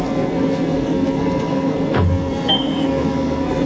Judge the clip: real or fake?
fake